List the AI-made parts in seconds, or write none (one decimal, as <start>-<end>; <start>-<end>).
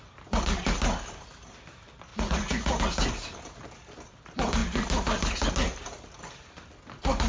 2.1-2.8